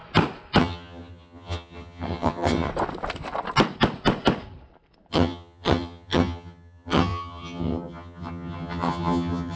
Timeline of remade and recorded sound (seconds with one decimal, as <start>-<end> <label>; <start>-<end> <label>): 0.0-0.6 recorded; 0.6-2.7 remade; 2.7-5.1 recorded; 5.1-9.6 remade